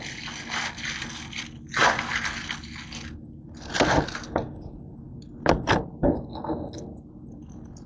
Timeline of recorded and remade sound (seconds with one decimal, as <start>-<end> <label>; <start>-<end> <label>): 0.0-7.9 recorded